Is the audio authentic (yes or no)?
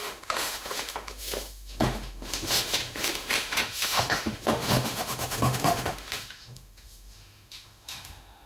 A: no